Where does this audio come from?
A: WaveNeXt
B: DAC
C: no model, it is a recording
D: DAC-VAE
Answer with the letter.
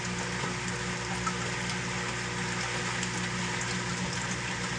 C